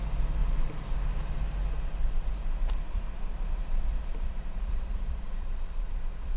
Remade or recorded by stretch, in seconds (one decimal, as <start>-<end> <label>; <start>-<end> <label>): 0.0-0.4 recorded; 0.4-1.4 remade; 1.4-2.6 recorded; 2.6-6.4 remade